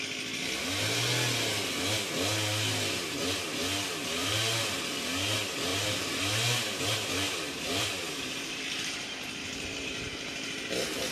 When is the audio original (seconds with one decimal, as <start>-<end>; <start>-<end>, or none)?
0.0-4.2; 4.8-5.7; 10.7-11.1